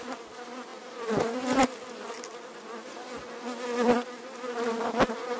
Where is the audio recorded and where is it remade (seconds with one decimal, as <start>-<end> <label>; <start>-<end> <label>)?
0.0-5.4 recorded